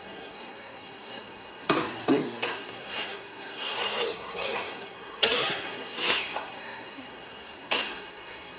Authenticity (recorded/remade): remade